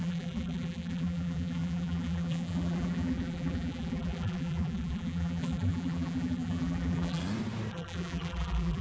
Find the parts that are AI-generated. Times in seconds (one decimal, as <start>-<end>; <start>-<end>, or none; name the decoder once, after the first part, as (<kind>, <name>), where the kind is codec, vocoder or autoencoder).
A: 0.0-7.2 (vocoder, BigVGAN v2); 7.7-8.8